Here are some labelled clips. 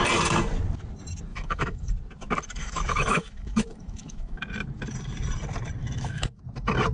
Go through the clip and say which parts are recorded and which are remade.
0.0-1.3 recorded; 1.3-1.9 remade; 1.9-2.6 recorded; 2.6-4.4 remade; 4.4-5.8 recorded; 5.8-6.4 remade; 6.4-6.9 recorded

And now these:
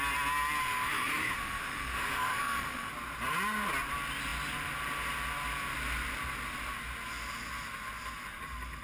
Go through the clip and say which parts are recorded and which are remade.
0.0-0.6 recorded; 0.6-2.9 remade; 2.9-8.8 recorded

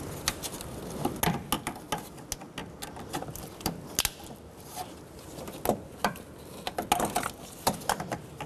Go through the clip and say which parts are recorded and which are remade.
0.0-8.5 recorded

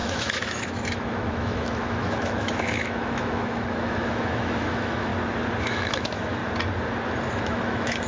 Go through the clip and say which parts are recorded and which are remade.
0.0-5.1 remade; 5.1-5.6 recorded; 5.6-6.4 remade; 6.4-7.3 recorded; 7.3-8.1 remade

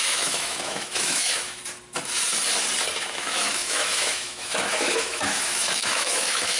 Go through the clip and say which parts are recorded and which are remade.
0.0-1.6 remade; 1.6-3.0 recorded; 3.0-6.6 remade